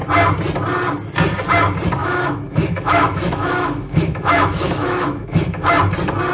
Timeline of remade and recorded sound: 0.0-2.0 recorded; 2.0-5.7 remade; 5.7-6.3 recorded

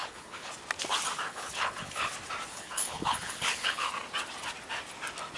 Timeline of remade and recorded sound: 0.0-0.5 remade; 0.5-1.3 recorded; 1.3-2.1 remade; 2.1-2.5 recorded; 2.5-3.9 remade; 3.9-5.4 recorded

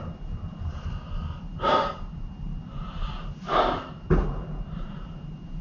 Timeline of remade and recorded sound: 0.0-5.6 remade

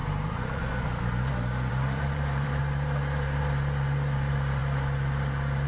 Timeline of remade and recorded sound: 0.0-0.7 remade; 0.7-1.7 recorded; 1.7-2.6 remade; 2.6-5.7 recorded

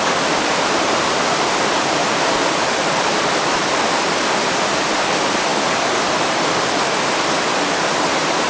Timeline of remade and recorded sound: 0.0-5.5 remade; 5.5-6.2 recorded; 6.2-8.5 remade

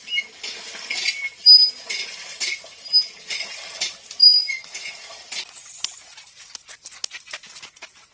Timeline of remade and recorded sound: 0.0-4.2 recorded; 4.2-4.7 remade; 4.7-8.1 recorded

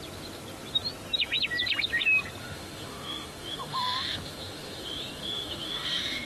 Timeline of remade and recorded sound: 0.0-2.4 recorded; 2.4-6.3 remade

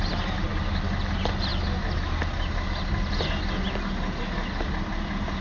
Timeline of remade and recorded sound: 0.0-5.4 recorded